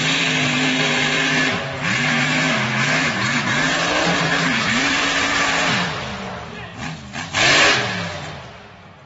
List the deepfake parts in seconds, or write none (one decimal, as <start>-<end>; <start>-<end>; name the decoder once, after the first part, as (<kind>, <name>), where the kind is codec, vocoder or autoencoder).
0.0-6.7 (vocoder, BigVGAN v2)